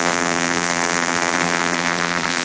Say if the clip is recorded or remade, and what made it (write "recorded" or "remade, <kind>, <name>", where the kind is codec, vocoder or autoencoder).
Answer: remade, vocoder, BigVGAN v2